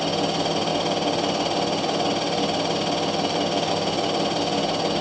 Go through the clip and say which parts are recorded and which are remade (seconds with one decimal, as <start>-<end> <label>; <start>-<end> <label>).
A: 0.0-5.0 recorded